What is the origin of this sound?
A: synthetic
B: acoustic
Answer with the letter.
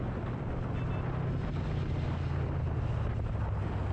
B